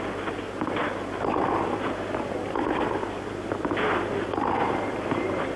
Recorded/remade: recorded